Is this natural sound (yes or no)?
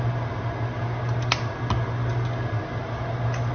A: yes